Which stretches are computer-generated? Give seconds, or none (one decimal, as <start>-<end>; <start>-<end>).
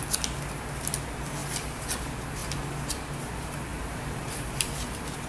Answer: 3.7-4.7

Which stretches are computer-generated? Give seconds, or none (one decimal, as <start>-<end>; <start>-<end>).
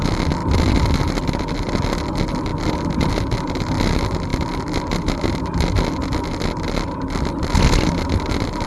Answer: none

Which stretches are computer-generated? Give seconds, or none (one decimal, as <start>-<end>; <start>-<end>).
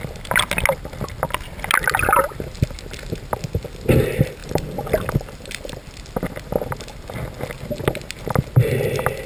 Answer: 4.4-5.7